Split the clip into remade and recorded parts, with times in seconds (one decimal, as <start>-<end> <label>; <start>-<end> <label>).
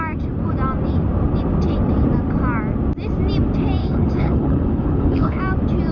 0.0-3.8 recorded; 3.8-5.4 remade; 5.4-5.9 recorded